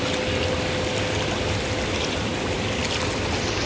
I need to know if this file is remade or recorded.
recorded